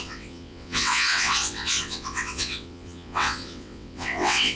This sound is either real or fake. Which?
fake